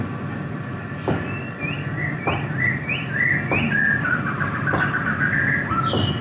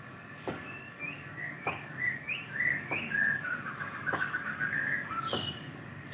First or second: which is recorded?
first